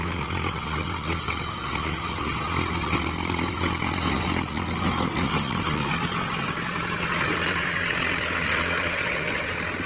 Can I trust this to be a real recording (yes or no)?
no